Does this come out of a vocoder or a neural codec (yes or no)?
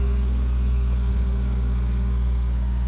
yes